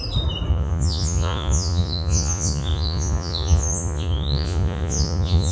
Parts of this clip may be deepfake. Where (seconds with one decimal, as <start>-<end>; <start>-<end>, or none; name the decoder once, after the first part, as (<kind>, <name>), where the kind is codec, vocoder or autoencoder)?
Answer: 0.5-5.5 (vocoder, Vocos)